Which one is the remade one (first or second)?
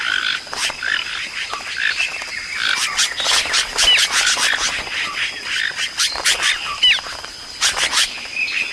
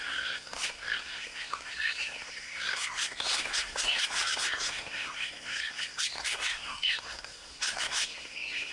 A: second